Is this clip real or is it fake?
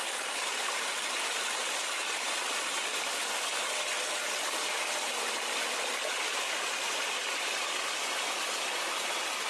real